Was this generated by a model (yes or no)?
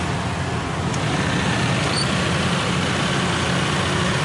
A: no